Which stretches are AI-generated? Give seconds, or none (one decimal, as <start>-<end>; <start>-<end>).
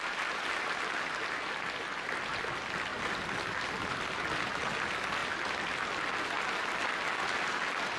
none